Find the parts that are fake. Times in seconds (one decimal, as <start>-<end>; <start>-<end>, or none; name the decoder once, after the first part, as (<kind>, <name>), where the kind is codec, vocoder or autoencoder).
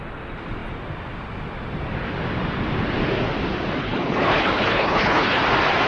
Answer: 3.8-5.4 (codec, HILCodec)